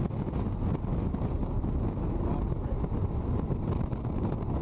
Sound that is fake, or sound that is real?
real